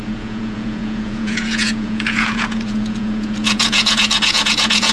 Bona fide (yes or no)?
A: no